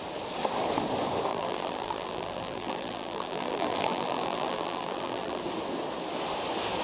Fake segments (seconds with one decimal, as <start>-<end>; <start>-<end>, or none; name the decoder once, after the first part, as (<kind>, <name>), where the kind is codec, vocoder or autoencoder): 1.3-5.4 (vocoder, BigVGAN v2)